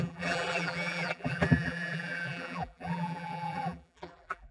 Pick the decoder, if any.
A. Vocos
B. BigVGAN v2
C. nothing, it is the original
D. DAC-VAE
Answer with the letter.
B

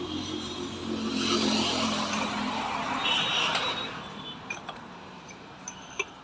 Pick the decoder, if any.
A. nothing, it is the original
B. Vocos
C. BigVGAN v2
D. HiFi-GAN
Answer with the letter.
C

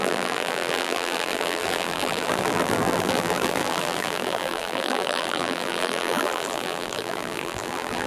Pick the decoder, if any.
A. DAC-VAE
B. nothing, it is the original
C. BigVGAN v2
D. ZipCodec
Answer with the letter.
C